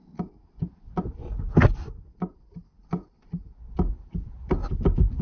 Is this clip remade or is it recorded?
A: recorded